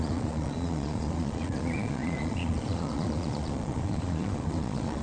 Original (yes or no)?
no